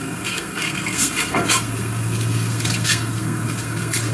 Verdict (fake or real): fake